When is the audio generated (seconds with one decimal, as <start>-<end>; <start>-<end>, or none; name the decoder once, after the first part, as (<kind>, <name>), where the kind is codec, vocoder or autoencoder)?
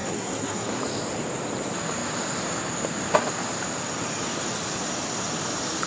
0.0-0.8 (codec, SNAC)